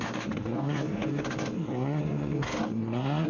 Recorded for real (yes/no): no